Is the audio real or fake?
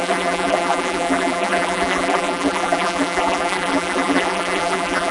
fake